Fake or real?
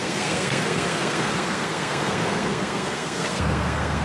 fake